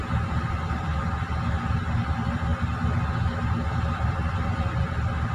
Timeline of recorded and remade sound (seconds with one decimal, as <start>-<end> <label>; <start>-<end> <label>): 0.0-5.3 recorded